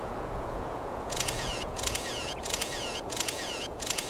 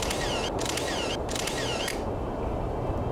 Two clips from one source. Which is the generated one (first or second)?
first